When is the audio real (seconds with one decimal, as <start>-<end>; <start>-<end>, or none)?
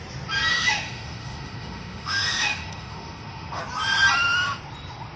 0.0-0.5; 3.6-5.2